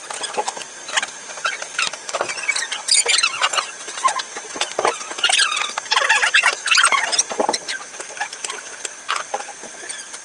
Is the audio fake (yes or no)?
no